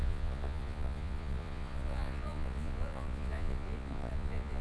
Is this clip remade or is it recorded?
remade